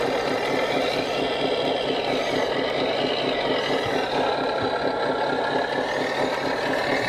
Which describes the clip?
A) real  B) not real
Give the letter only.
A